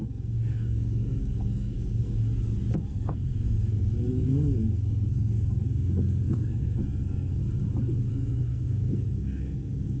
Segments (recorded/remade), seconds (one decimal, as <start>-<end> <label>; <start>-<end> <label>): 0.0-2.2 remade; 2.2-2.7 recorded; 2.7-7.4 remade; 7.4-8.1 recorded; 8.1-10.0 remade

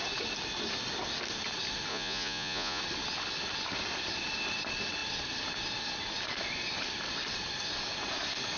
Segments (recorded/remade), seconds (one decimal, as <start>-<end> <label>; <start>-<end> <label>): 0.0-1.9 recorded; 1.9-2.8 remade; 2.8-8.6 recorded

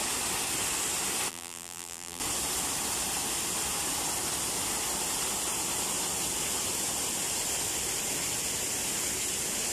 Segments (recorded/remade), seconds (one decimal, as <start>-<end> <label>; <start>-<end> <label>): 0.0-1.3 recorded; 1.3-2.2 remade; 2.2-9.7 recorded

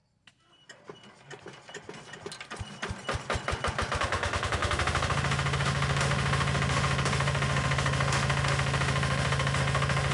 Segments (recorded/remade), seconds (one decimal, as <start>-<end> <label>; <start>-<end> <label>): 0.0-4.0 recorded; 4.0-10.1 remade

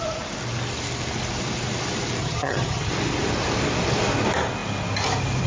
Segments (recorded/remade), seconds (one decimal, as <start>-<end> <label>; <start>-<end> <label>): 0.0-2.2 recorded; 2.2-2.9 remade; 2.9-5.5 recorded

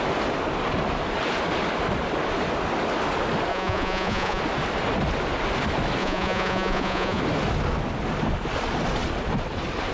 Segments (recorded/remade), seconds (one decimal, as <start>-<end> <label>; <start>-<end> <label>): 0.0-3.5 recorded; 3.5-4.4 remade; 4.4-6.0 recorded; 6.0-7.2 remade; 7.2-9.9 recorded

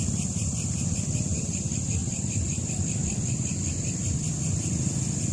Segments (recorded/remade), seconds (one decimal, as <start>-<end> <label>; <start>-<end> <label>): 0.0-5.3 recorded